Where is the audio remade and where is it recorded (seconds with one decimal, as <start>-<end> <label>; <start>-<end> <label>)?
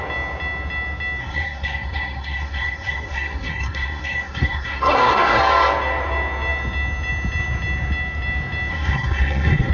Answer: 0.0-1.2 recorded; 1.2-5.4 remade; 5.4-8.7 recorded; 8.7-9.7 remade